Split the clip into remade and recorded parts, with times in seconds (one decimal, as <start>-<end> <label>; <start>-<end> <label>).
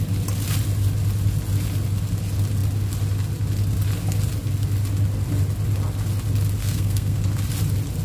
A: 0.0-6.6 recorded; 6.6-7.2 remade; 7.2-8.0 recorded